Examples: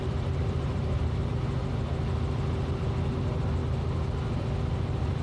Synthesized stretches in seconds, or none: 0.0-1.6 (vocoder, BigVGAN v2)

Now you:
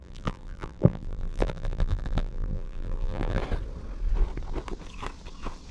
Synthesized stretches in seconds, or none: 0.0-3.4 (vocoder, BigVGAN v2)

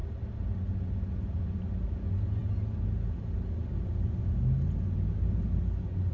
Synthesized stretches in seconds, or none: none

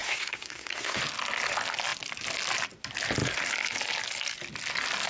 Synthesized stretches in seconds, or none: 0.0-1.0 (codec, SNAC)

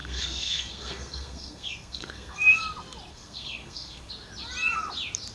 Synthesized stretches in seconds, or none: 0.0-2.6 (codec, SNAC); 3.1-4.1

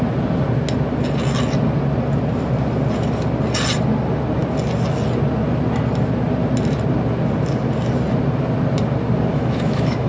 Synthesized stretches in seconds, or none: 9.3-10.1 (autoencoder, DAC-VAE)

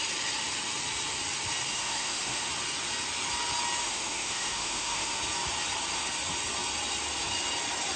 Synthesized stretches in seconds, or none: 1.7-2.5 (autoencoder, DAC-VAE); 3.8-5.2

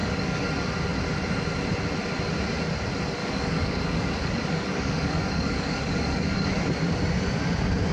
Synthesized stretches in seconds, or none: 0.0-0.5 (codec, DAC); 3.2-6.7